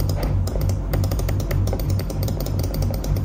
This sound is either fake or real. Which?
fake